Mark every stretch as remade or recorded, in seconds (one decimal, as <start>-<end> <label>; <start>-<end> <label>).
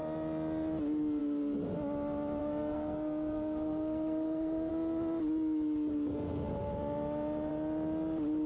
0.0-2.4 recorded; 2.4-4.7 remade; 4.7-8.5 recorded